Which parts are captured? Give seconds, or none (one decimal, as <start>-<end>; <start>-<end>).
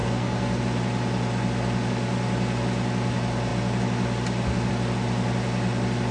0.6-6.1